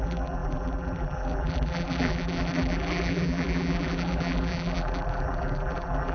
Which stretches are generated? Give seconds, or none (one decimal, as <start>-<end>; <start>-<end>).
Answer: 0.0-6.1